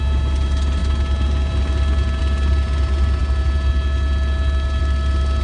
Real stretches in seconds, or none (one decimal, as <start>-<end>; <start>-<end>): 0.0-5.4